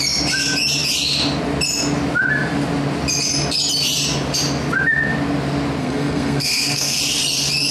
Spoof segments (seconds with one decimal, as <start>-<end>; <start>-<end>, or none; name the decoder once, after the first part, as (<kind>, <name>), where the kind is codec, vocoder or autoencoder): 5.8-7.0 (codec, SNAC)